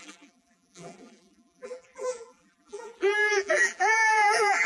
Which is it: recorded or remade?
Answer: remade